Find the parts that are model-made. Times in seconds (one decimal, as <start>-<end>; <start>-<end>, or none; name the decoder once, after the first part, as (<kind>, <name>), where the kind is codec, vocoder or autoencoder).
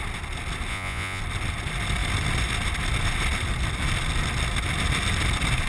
0.7-1.2 (vocoder, Vocos)